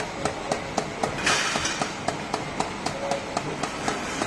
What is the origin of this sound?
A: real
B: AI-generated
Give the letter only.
A